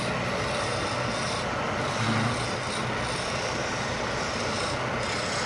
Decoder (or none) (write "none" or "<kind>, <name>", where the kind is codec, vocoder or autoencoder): none